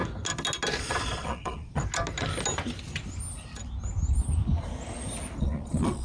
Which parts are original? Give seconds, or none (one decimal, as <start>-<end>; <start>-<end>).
0.0-0.8; 1.8-5.4